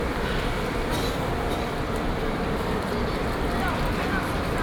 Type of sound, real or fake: fake